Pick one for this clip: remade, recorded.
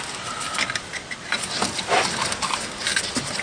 recorded